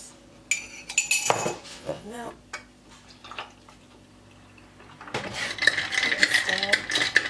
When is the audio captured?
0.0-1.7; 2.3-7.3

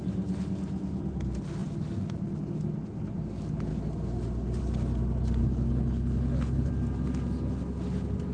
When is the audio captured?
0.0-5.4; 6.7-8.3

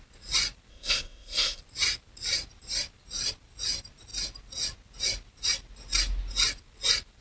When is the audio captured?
0.0-0.7; 1.6-7.2

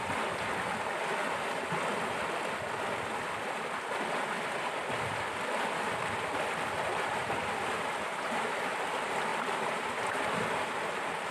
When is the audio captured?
0.0-6.9; 8.8-9.3; 10.0-11.3

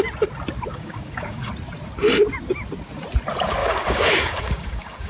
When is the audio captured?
0.0-0.7; 1.5-3.6